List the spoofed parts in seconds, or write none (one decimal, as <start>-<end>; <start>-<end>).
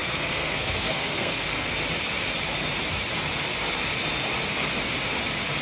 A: 0.0-1.7